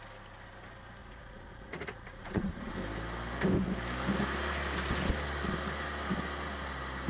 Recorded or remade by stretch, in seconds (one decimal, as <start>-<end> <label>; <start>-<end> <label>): 0.0-1.0 recorded; 1.0-2.7 remade; 2.7-7.1 recorded